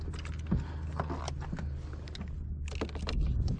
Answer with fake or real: real